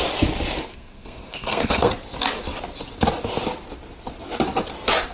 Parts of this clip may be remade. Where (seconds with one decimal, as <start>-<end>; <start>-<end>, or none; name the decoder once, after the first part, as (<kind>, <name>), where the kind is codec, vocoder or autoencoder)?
0.7-1.9 (codec, SNAC)